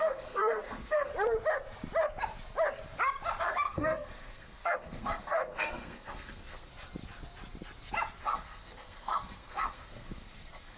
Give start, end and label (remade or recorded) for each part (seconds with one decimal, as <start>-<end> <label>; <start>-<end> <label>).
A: 0.0-1.1 remade; 1.1-3.4 recorded; 3.4-6.7 remade; 6.7-8.2 recorded; 8.2-10.8 remade